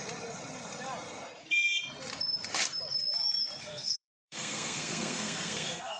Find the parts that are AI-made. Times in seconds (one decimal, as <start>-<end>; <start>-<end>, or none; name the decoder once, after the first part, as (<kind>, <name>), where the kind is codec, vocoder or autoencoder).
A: 3.6-6.0 (codec, SNAC)